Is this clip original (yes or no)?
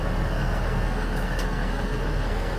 no